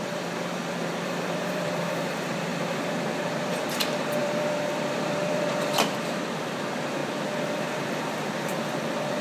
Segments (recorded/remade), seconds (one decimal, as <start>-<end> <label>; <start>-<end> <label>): 0.0-2.5 remade; 2.5-3.5 recorded; 3.5-9.2 remade